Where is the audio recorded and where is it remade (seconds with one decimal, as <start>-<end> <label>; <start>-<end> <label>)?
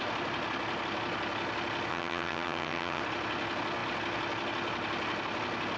0.0-1.9 recorded; 1.9-3.0 remade; 3.0-5.8 recorded